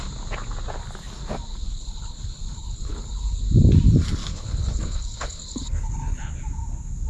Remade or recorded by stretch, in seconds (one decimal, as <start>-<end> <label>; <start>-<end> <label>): 0.0-1.5 recorded; 1.5-3.4 remade; 3.4-4.2 recorded; 4.2-6.3 remade; 6.3-7.1 recorded